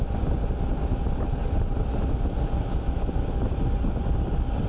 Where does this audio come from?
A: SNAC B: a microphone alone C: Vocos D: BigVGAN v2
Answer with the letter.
B